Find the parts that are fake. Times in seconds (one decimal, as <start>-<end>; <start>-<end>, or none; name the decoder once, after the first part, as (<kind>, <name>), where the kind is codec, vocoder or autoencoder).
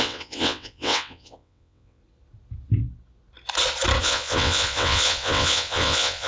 0.0-2.0 (vocoder, WaveNeXt); 4.0-6.3